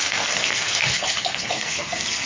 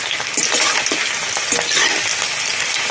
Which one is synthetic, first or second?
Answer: first